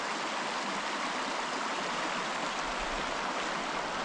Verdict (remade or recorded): recorded